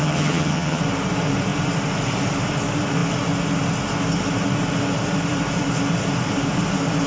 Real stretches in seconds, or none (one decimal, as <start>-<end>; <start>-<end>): 0.8-7.1